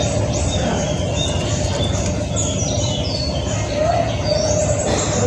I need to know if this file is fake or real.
real